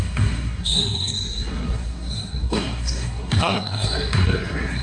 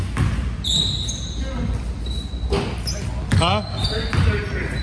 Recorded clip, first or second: second